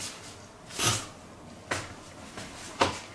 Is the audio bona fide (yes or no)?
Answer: yes